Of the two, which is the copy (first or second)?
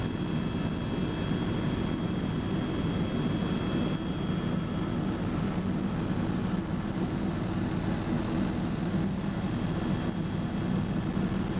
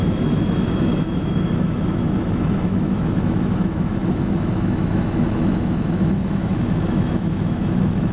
second